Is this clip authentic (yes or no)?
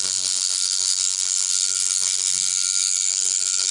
no